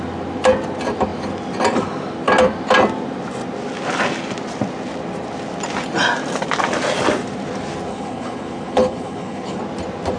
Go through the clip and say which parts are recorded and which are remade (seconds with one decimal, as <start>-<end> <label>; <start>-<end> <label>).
0.0-7.9 recorded; 7.9-9.6 remade; 9.6-10.2 recorded